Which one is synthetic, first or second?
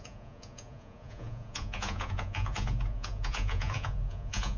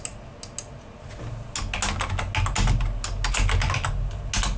first